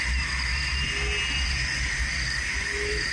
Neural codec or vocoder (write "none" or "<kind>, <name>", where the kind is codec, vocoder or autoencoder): none